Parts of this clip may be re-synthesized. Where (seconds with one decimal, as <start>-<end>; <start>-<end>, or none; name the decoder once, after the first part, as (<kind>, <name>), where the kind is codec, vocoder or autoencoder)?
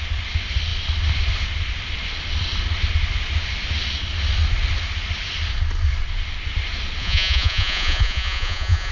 7.0-8.9 (vocoder, Vocos)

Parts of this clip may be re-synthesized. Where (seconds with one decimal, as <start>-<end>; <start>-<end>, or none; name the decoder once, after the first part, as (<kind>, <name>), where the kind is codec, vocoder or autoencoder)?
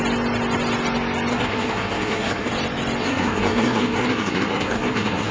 1.3-2.5 (codec, SNAC); 3.0-5.3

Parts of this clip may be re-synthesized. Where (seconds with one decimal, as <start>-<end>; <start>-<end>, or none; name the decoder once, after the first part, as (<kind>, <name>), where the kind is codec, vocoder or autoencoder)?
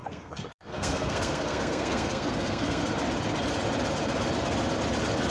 0.0-2.8 (codec, SNAC)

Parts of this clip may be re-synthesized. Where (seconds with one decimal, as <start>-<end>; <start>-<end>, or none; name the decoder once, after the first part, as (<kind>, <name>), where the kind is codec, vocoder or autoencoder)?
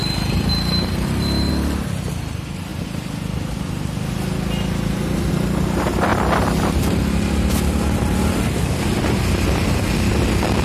0.0-1.5 (vocoder, BigVGAN v2); 6.1-9.2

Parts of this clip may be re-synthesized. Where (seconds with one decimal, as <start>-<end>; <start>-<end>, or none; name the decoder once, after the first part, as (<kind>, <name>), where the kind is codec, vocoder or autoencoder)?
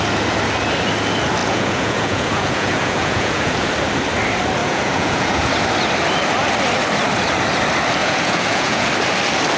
1.4-3.7 (vocoder, Vocos); 4.6-5.5; 8.0-8.9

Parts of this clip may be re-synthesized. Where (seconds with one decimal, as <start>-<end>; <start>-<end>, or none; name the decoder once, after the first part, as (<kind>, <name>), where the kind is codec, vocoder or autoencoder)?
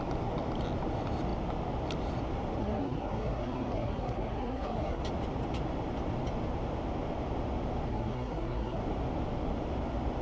2.6-5.0 (codec, SNAC); 7.9-8.8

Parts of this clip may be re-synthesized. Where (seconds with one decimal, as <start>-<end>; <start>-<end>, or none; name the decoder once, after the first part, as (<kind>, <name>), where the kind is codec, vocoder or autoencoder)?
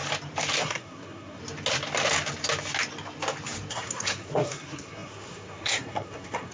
0.6-1.4 (codec, SNAC); 3.7-6.5